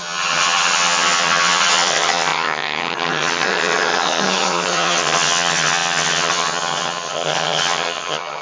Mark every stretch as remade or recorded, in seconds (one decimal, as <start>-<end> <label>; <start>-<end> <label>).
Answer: 0.0-8.4 remade